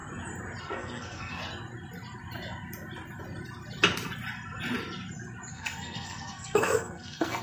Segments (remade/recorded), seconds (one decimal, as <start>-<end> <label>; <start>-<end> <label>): 0.0-0.6 recorded; 0.6-1.4 remade; 1.4-5.5 recorded; 5.5-7.4 remade